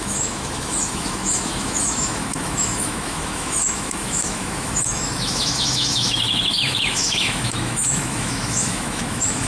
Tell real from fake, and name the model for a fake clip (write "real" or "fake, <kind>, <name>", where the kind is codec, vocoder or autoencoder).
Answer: fake, autoencoder, DAC-VAE